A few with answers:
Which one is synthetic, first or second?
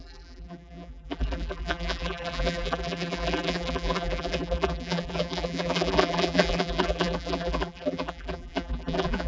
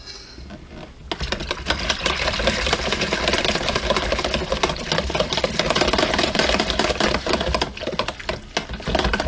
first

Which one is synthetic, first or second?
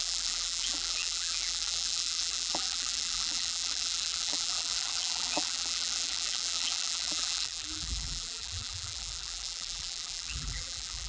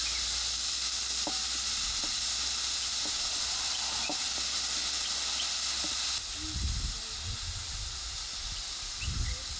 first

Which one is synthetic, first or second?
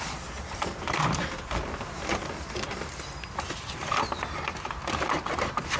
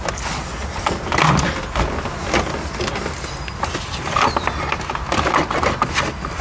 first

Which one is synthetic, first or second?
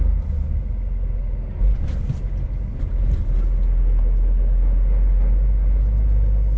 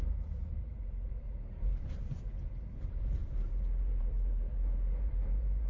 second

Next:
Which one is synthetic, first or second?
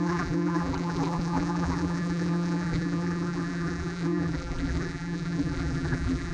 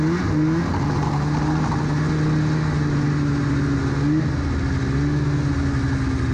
first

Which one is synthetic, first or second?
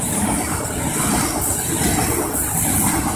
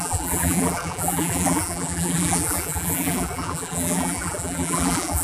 second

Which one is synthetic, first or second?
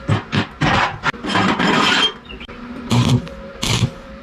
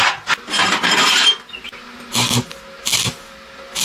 first